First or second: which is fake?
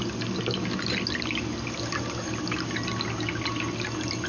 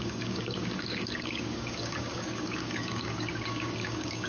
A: second